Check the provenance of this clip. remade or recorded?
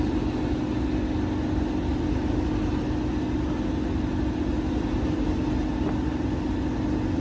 recorded